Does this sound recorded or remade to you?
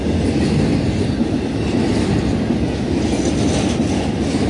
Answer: recorded